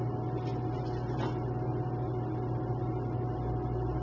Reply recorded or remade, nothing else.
recorded